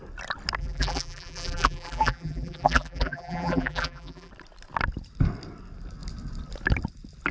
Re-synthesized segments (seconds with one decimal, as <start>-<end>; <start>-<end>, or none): 0.6-4.3